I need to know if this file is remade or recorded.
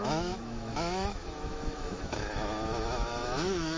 remade